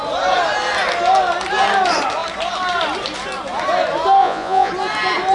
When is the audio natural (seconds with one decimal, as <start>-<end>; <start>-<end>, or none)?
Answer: 0.0-4.2; 4.7-5.3